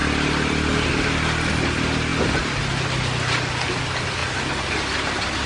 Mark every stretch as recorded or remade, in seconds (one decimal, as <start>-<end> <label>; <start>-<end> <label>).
0.0-0.9 remade; 0.9-2.1 recorded; 2.1-3.8 remade; 3.8-4.2 recorded; 4.2-4.9 remade; 4.9-5.5 recorded